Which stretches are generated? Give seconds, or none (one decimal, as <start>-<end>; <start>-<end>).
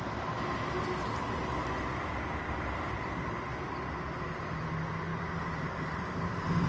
none